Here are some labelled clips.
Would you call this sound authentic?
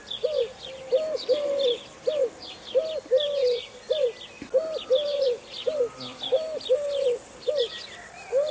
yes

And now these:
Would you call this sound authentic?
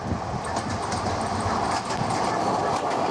yes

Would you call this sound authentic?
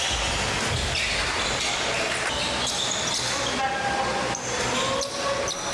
yes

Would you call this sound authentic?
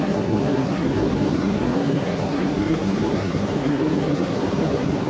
no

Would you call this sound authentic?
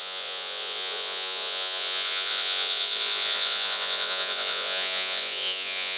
no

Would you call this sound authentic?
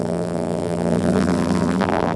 no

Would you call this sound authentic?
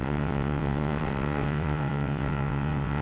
no